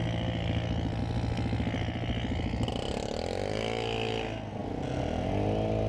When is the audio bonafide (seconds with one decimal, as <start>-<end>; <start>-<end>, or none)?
0.0-5.9